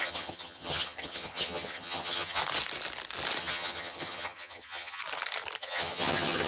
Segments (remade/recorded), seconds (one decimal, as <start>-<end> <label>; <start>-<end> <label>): 0.0-2.4 remade; 2.4-3.4 recorded; 3.4-5.0 remade; 5.0-5.6 recorded; 5.6-6.5 remade